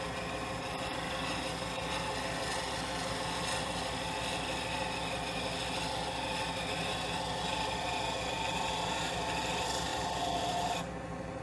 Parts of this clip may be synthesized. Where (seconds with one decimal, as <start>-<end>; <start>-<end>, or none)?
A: none